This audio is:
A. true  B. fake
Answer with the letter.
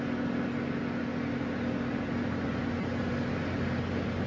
A